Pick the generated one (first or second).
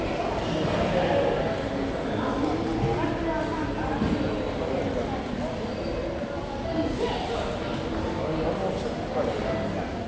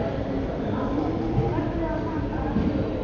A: second